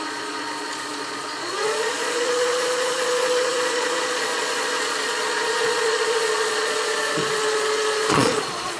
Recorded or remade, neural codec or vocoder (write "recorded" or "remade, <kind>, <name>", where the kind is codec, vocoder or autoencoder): remade, vocoder, Vocos